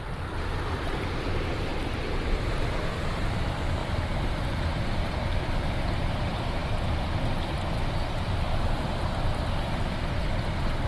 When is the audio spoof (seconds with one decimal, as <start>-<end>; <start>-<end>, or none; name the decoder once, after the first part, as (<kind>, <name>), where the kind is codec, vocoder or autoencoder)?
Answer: 1.7-2.6 (vocoder, BigVGAN v2); 3.8-6.1